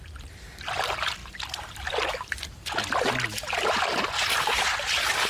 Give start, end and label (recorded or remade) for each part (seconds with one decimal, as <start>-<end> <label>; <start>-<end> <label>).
0.0-5.3 recorded